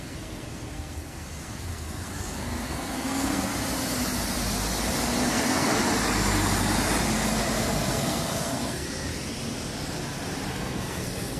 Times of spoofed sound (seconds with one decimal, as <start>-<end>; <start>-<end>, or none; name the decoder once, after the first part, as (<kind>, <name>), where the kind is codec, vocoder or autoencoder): 0.0-3.5 (codec, SNAC); 5.3-5.8; 7.6-9.1; 10.5-11.4